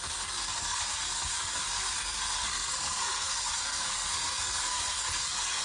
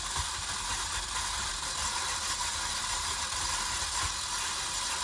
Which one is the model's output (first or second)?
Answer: first